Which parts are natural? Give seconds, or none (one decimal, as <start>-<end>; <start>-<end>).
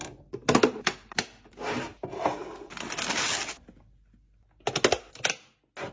0.0-5.9